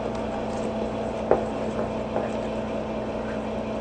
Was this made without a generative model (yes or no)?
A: yes